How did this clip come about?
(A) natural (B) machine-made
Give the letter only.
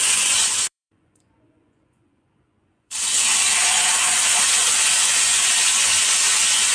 B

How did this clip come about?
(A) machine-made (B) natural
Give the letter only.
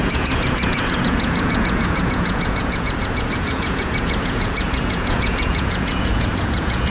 A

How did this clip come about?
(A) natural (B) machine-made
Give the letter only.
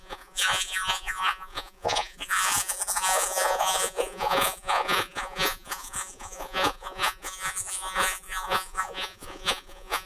B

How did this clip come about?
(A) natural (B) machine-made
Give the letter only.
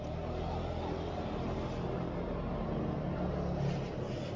A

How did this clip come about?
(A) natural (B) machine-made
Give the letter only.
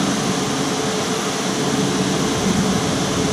A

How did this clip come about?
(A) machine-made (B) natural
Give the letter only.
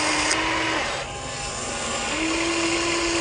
B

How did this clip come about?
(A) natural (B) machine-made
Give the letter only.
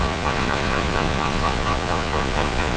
B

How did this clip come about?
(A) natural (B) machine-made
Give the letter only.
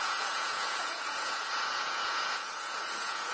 B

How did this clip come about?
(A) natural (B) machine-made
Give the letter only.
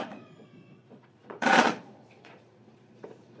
B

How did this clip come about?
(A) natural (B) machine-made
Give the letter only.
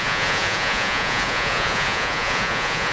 B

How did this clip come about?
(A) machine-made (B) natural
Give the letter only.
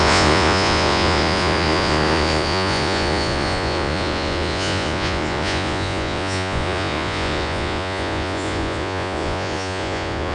A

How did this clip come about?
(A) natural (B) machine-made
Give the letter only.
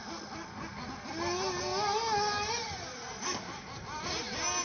A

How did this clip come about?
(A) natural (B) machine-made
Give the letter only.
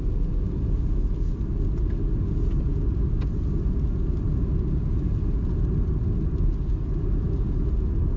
A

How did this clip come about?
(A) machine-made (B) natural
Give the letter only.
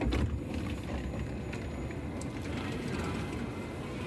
B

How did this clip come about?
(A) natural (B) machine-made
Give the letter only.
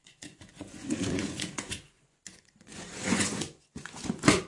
B